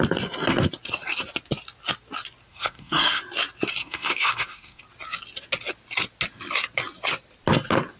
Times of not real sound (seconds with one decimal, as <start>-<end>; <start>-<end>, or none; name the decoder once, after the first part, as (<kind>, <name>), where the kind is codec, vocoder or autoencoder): 2.5-3.2 (codec, SNAC); 3.8-4.8